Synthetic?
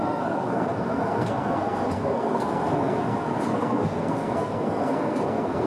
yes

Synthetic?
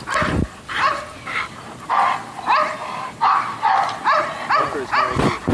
no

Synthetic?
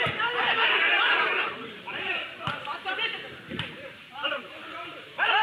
yes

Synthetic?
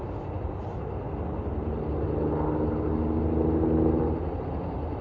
no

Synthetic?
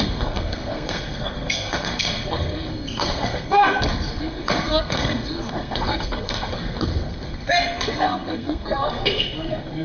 yes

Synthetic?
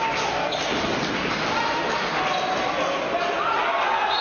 no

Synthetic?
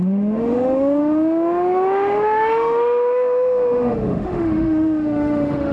yes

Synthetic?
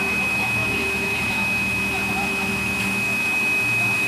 yes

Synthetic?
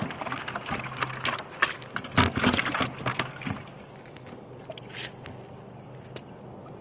no